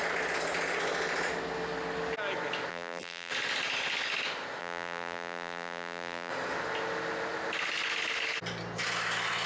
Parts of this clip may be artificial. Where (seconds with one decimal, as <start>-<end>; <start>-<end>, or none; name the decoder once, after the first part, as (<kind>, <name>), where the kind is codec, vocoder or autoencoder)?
2.7-3.3 (vocoder, BigVGAN v2); 4.6-6.3